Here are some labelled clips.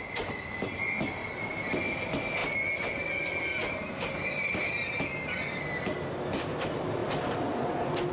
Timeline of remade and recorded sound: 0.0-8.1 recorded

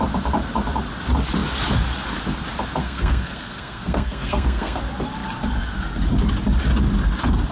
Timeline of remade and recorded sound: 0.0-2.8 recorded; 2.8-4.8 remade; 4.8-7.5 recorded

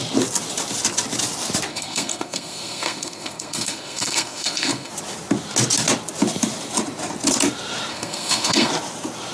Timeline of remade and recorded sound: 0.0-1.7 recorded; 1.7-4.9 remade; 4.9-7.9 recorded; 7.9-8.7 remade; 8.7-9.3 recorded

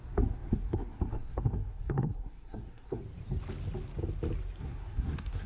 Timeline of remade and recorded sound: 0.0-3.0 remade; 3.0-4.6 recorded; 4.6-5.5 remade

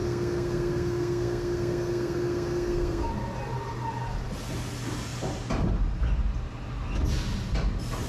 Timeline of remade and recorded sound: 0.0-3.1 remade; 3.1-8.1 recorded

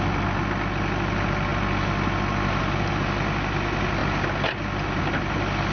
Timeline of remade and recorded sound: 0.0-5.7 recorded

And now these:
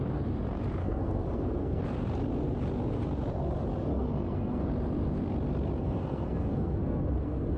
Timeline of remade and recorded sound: 0.0-0.8 recorded; 0.8-1.8 remade; 1.8-3.9 recorded; 3.9-4.7 remade; 4.7-5.8 recorded; 5.8-7.6 remade